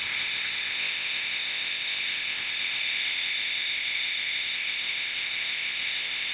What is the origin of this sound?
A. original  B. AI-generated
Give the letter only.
B